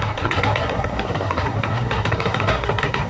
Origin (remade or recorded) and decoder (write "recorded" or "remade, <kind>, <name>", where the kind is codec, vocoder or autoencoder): remade, codec, SNAC